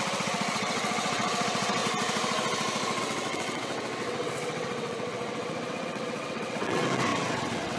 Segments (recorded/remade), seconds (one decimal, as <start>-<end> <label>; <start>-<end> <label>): 0.0-1.8 remade; 1.8-3.0 recorded; 3.0-7.8 remade